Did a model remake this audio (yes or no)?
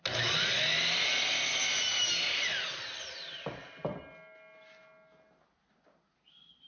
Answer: no